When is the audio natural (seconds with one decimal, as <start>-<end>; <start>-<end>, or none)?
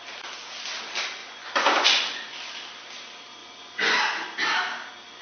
0.0-1.2; 2.3-3.4; 4.0-5.2